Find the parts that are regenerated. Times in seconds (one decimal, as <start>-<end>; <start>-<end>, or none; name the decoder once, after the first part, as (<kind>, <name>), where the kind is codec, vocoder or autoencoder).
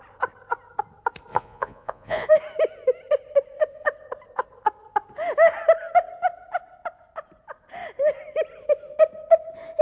1.3-2.3 (vocoder, Vocos)